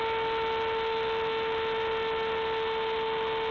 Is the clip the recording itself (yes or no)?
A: yes